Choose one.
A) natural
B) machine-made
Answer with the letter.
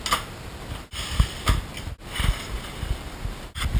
A